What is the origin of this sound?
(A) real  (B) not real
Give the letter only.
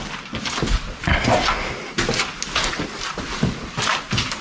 A